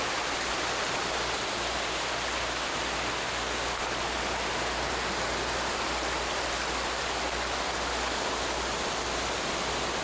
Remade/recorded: recorded